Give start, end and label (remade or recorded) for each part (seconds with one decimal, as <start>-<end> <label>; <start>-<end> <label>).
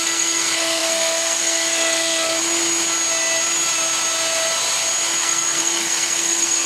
0.0-2.4 remade; 2.4-5.2 recorded; 5.2-6.7 remade